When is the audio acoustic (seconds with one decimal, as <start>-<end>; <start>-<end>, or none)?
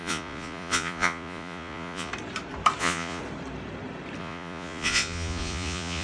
2.1-2.8; 3.2-4.2